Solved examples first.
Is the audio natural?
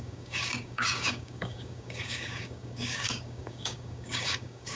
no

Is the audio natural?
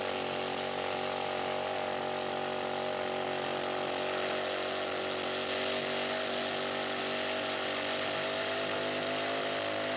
yes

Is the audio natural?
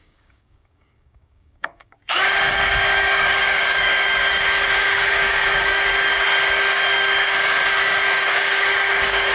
no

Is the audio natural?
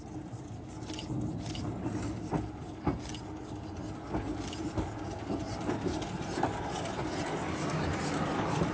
yes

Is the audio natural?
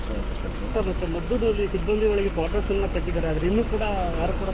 no